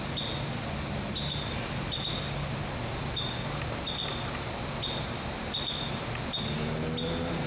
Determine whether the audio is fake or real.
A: real